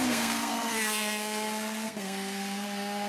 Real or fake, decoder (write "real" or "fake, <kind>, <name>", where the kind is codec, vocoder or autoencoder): fake, codec, SNAC